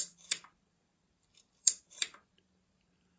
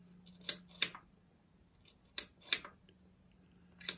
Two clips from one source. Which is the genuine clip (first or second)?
second